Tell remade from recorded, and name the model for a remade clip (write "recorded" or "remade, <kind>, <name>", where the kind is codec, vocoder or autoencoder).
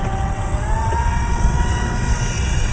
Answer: remade, vocoder, WaveNeXt